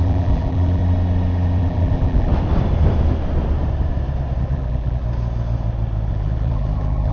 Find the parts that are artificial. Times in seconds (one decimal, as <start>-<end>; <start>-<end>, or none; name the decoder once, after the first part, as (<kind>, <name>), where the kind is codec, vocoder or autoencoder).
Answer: 0.0-0.8 (vocoder, BigVGAN v2); 1.6-2.3; 4.4-5.0; 6.1-7.1